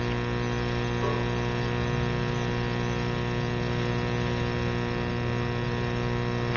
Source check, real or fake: real